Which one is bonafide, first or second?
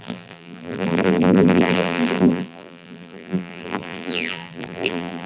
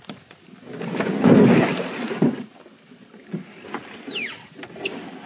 second